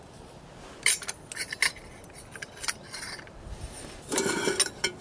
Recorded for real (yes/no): yes